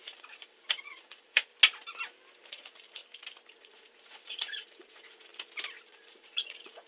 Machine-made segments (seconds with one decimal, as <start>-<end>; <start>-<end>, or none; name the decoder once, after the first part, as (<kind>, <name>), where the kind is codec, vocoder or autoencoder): 0.0-1.5 (vocoder, Vocos); 2.5-3.0; 3.5-5.3; 5.9-6.9